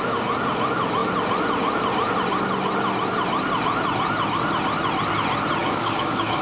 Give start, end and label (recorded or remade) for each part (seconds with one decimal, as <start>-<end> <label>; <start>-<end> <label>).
0.0-5.6 recorded; 5.6-6.4 remade